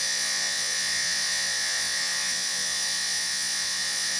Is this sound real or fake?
fake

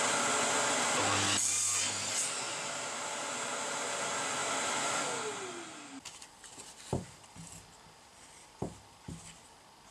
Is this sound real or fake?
real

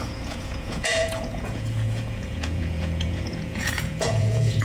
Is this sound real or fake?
fake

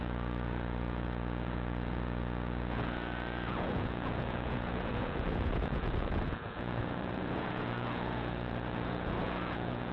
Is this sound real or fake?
fake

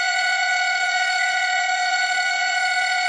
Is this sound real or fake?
fake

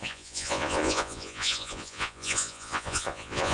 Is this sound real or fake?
fake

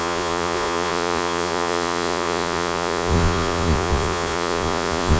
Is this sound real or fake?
fake